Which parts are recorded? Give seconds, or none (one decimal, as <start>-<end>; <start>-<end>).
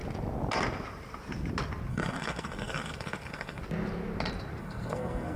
0.0-1.9; 3.6-4.6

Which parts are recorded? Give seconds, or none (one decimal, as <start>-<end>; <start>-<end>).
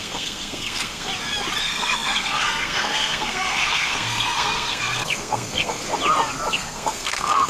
1.1-1.6; 5.8-6.5